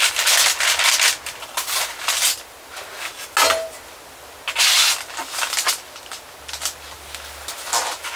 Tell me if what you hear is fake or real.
real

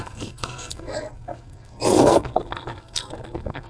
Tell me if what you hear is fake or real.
fake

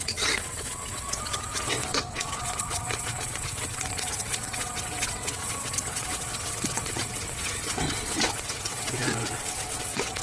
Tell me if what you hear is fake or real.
fake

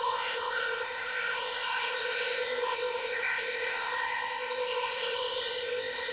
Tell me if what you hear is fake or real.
fake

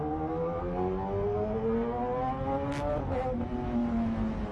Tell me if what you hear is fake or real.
real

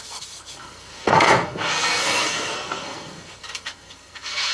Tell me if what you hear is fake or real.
fake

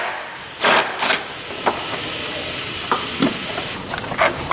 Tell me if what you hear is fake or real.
real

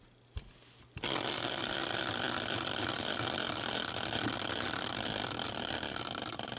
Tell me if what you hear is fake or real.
real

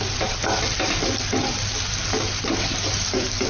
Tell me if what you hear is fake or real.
real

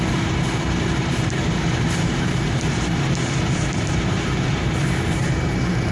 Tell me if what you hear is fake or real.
fake